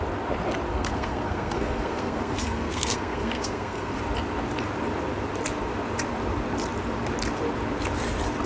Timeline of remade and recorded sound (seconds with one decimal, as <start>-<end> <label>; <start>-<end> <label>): 0.0-0.7 recorded; 0.7-4.0 remade; 4.0-8.5 recorded